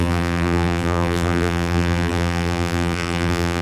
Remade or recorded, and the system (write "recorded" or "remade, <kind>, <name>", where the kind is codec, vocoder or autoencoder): remade, vocoder, BigVGAN v2